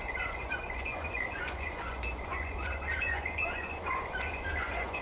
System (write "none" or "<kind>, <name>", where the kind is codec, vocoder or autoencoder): vocoder, Vocos